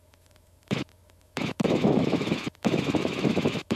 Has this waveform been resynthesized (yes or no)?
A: yes